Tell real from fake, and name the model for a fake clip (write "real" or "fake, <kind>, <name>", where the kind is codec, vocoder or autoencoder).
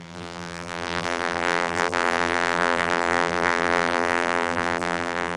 fake, vocoder, BigVGAN v2